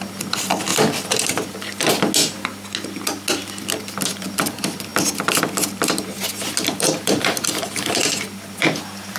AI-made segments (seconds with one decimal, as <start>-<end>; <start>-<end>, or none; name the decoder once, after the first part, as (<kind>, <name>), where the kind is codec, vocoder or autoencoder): 0.0-0.7 (vocoder, BigVGAN v2); 4.4-4.9; 6.6-8.0; 8.6-9.2